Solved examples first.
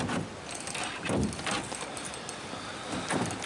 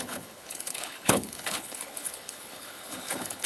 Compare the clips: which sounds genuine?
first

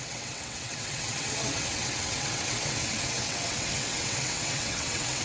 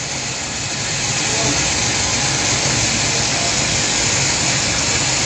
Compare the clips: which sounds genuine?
second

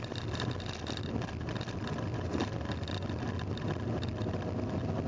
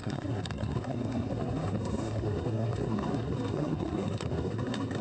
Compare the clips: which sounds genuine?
first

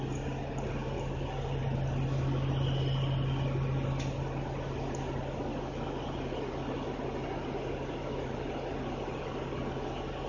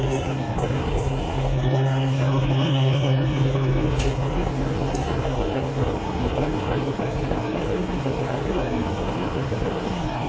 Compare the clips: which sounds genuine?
first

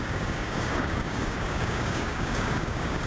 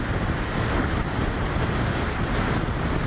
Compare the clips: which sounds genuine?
second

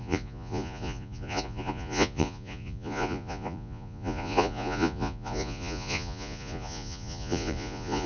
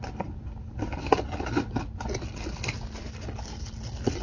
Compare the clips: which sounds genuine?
second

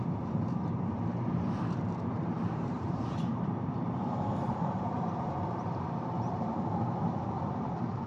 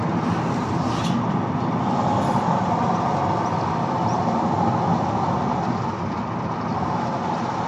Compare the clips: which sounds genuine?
second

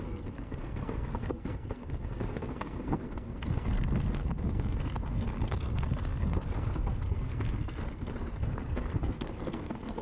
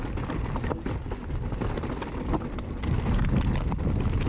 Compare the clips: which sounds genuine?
second